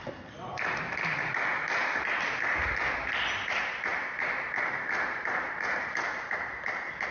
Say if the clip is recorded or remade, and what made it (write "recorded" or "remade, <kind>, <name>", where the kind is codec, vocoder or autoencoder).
recorded